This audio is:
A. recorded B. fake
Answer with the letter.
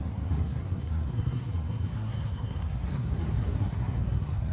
B